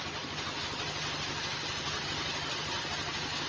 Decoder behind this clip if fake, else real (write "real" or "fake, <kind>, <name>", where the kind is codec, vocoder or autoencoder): real